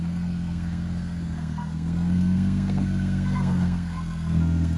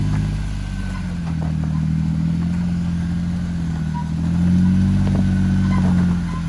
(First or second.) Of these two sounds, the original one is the second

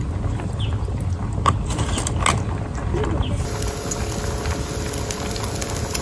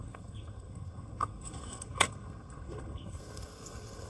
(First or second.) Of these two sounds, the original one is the first